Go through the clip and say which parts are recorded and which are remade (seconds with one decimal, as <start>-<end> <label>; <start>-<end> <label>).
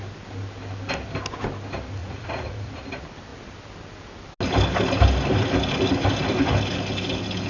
0.0-2.0 recorded; 2.0-2.8 remade; 2.8-7.5 recorded